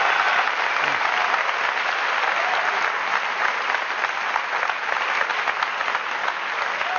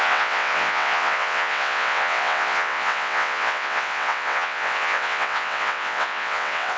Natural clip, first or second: first